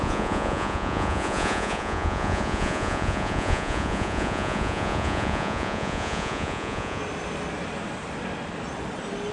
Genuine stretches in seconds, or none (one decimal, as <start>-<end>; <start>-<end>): 7.0-9.3